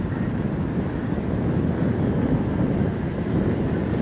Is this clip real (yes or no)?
yes